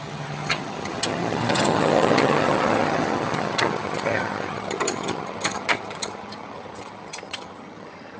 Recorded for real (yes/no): no